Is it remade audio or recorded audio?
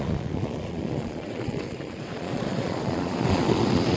remade